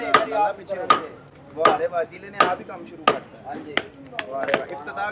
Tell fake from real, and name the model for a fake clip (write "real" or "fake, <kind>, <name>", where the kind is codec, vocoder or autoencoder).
real